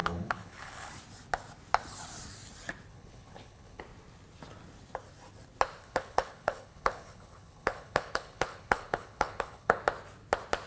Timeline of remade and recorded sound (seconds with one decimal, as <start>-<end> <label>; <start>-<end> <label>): 0.0-0.9 remade; 0.9-2.9 recorded; 2.9-3.8 remade; 3.8-5.8 recorded; 5.8-9.8 remade; 9.8-10.7 recorded